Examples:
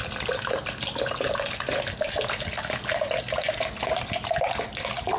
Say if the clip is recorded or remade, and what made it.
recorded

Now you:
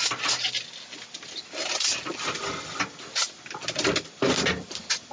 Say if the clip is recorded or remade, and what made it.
recorded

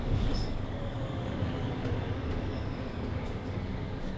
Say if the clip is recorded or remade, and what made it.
remade, codec, DAC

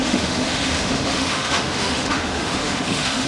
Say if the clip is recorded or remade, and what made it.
remade, autoencoder, DAC-VAE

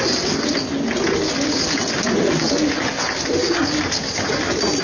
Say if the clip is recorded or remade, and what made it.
recorded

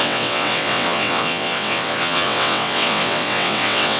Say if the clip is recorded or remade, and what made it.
remade, vocoder, WaveNeXt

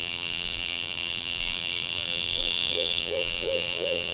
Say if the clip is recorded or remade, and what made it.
remade, vocoder, BigVGAN v2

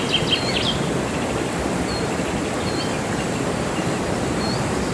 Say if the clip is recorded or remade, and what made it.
recorded